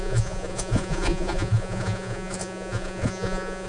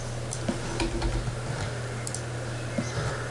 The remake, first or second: first